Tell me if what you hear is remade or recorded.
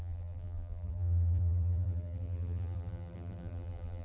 remade